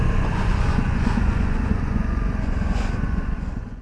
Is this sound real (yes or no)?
no